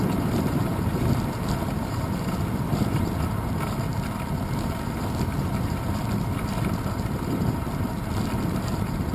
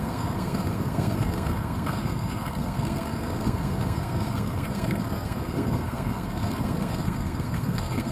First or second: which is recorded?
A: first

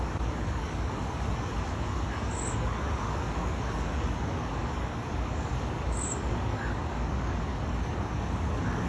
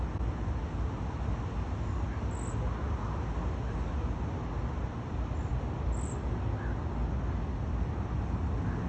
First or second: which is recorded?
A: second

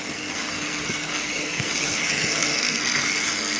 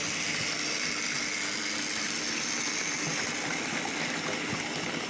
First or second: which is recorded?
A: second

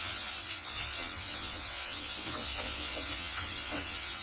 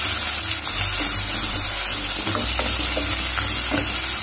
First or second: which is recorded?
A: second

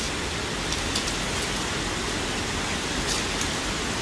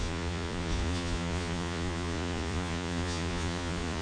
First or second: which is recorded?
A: first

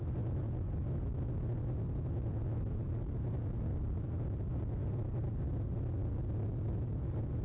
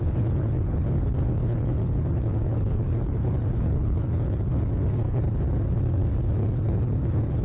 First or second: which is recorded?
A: first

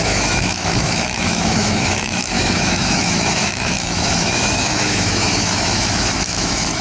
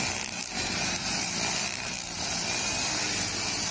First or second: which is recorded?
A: second